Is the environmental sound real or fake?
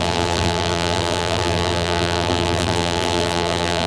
fake